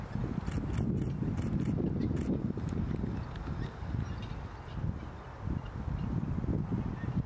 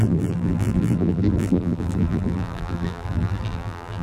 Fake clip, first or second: second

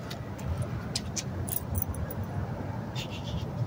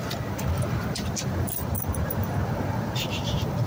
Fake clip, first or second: second